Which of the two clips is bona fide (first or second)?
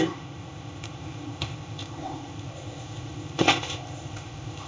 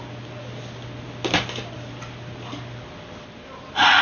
second